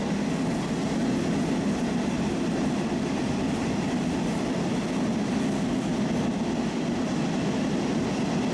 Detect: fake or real real